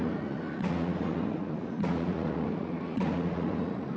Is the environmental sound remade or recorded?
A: remade